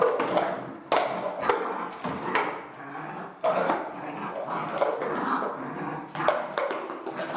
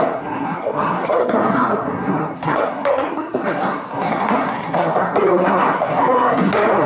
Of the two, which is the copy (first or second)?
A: second